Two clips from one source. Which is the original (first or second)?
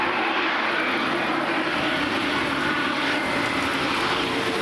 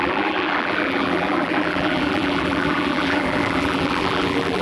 first